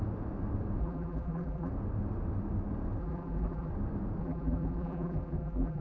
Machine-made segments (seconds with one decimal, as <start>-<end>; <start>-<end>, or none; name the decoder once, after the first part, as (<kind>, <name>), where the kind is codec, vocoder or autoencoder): 0.8-1.7 (vocoder, BigVGAN v2); 3.0-3.7; 4.2-5.8